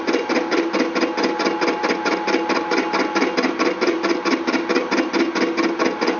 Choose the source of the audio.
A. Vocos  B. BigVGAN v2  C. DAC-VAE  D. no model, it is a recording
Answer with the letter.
D